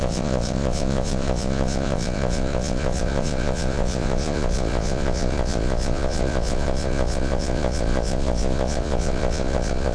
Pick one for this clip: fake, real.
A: fake